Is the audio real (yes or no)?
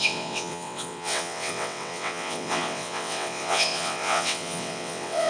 no